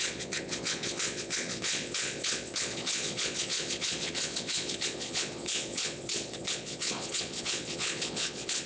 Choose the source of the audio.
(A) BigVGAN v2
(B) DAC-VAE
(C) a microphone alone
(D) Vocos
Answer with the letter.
D